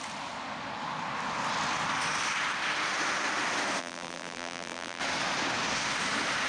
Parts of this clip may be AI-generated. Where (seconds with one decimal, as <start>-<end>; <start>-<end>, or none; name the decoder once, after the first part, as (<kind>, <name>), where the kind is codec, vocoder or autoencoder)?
3.8-5.0 (vocoder, BigVGAN v2)